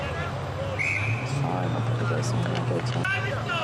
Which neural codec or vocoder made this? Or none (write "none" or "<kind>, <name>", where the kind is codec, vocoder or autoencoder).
none